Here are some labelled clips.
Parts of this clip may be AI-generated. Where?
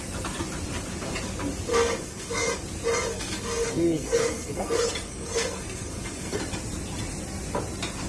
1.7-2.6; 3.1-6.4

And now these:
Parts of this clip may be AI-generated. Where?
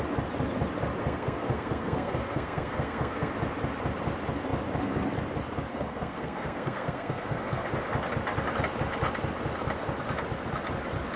1.0-3.3; 5.7-7.7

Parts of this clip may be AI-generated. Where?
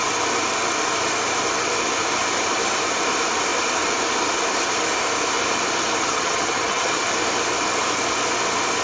6.0-7.1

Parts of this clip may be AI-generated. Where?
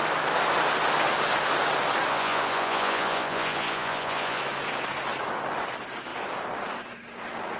2.1-4.4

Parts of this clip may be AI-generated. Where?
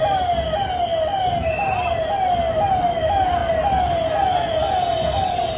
none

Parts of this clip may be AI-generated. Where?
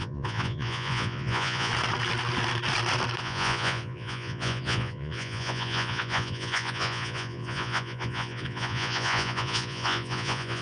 0.0-1.7; 3.2-10.6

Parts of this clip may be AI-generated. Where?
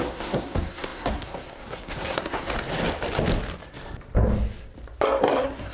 0.0-2.5; 5.2-5.7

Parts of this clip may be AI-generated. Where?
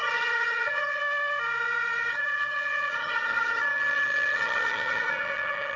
0.0-1.0; 2.1-5.8